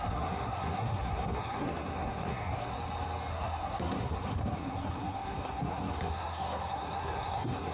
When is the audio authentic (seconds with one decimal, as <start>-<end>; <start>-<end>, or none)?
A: 2.7-3.3